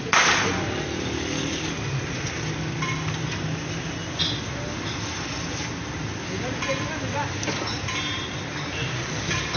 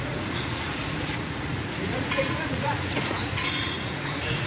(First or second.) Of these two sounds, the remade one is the second